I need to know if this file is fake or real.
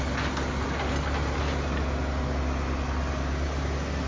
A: real